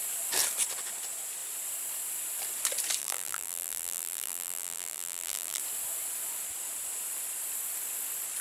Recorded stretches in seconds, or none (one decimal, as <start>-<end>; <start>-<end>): 0.0-3.0; 5.6-8.4